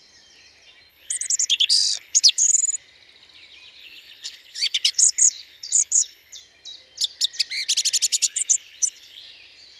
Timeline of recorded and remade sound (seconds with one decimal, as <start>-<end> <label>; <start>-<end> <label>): 0.0-0.9 recorded; 0.9-2.6 remade; 2.6-3.8 recorded; 3.8-6.4 remade; 6.4-8.1 recorded; 8.1-9.2 remade; 9.2-9.8 recorded